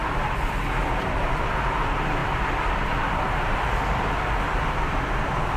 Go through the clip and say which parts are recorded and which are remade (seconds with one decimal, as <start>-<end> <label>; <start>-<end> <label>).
0.0-0.8 remade; 0.8-5.6 recorded